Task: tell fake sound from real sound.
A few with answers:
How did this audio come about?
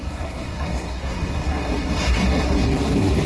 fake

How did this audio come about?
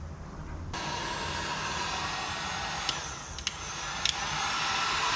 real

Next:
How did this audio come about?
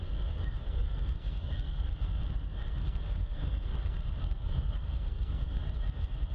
fake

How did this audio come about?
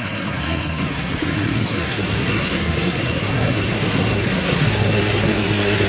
fake